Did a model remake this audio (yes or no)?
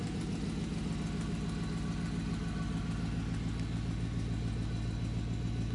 no